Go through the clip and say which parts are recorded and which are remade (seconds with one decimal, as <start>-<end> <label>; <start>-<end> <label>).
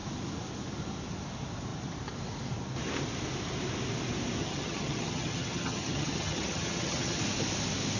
0.0-4.4 recorded; 4.4-7.2 remade; 7.2-8.0 recorded